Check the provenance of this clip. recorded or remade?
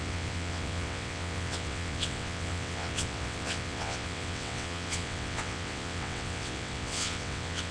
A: remade